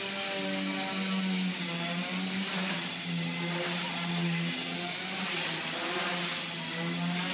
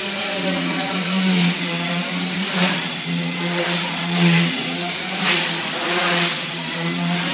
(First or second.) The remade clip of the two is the second